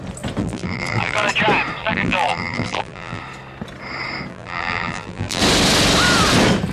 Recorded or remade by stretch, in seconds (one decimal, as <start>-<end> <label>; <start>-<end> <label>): 0.0-0.4 recorded; 0.4-1.3 remade; 1.3-1.8 recorded; 1.8-3.2 remade; 3.2-4.3 recorded; 4.3-5.4 remade; 5.4-6.7 recorded